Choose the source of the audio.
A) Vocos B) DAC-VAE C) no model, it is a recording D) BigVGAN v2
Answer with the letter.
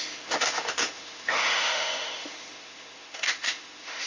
B